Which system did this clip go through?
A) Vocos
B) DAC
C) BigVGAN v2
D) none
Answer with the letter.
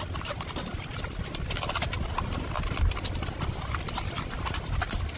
D